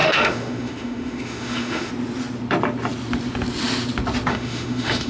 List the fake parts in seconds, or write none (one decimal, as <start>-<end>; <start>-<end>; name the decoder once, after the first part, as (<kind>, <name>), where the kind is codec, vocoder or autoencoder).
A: 0.0-1.9 (autoencoder, DAC-VAE); 4.3-5.1

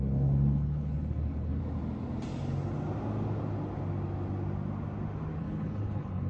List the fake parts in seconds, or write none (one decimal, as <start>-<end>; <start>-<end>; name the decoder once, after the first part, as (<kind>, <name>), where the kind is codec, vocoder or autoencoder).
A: 0.0-1.6 (codec, HILCodec); 5.4-6.3